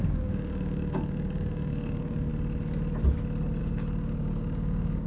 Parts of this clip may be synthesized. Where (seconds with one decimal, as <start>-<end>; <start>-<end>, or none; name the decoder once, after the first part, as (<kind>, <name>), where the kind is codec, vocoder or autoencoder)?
0.0-2.3 (codec, DAC); 3.6-5.1